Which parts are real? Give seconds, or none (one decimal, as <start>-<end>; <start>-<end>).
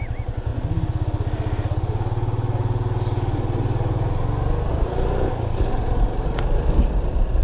0.0-7.4